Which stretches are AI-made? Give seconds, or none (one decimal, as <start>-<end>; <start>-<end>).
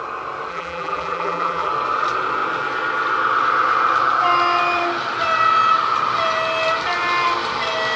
0.5-1.7